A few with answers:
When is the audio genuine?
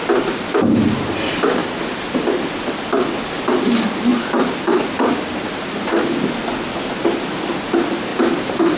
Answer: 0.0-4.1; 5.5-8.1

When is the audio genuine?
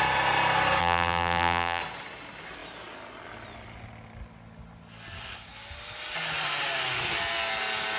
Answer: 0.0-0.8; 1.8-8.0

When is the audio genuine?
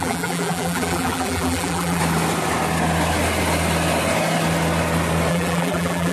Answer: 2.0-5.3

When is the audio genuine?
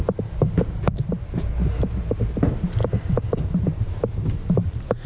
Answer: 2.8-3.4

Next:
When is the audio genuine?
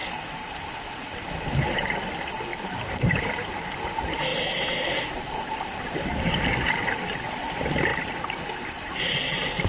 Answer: 0.7-2.5; 3.8-7.9; 8.9-9.7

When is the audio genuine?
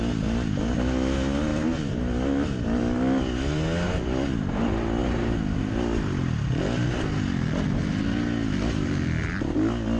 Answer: 0.0-1.5; 2.8-5.0; 5.6-10.0